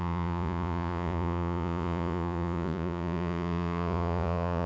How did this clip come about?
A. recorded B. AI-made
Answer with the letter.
B